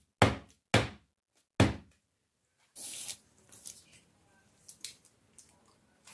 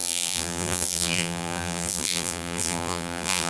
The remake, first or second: second